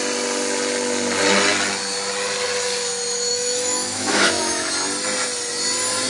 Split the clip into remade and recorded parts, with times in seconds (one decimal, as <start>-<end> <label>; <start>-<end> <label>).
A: 0.0-3.3 recorded; 3.3-4.7 remade; 4.7-6.1 recorded